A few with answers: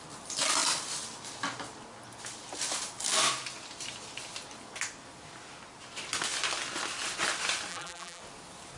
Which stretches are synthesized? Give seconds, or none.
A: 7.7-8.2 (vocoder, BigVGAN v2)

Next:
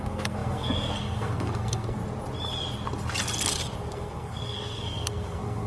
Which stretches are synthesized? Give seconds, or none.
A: 0.0-2.0 (codec, SNAC); 3.9-5.7

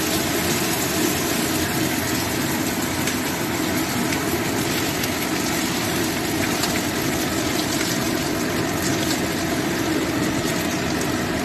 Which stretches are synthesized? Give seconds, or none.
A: none